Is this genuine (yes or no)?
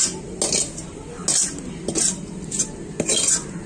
yes